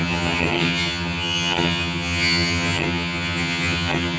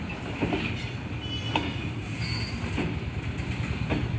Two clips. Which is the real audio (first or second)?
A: second